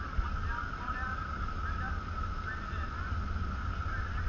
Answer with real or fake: real